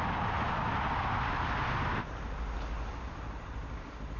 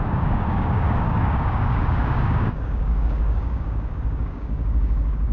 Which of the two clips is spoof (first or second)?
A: second